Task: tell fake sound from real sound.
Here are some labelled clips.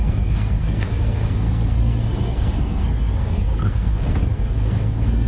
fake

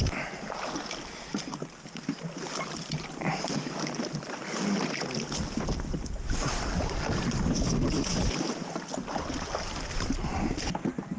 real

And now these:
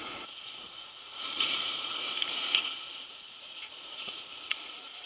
fake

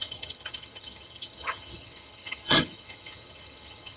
fake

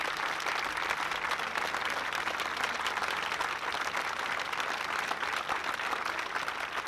real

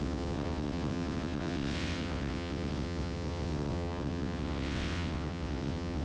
fake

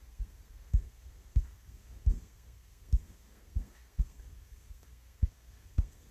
fake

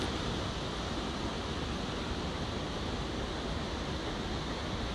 real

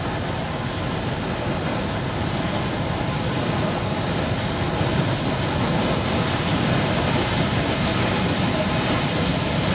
real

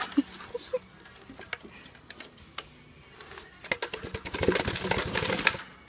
real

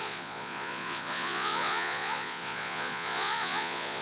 fake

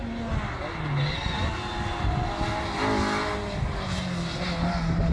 real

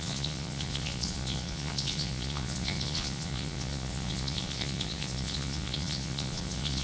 fake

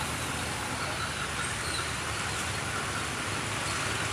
real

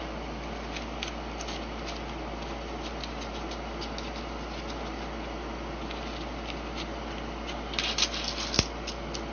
real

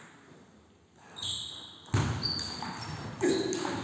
real